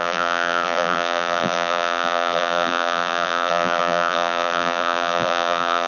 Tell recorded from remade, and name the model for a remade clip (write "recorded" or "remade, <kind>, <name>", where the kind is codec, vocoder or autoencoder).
remade, vocoder, BigVGAN v2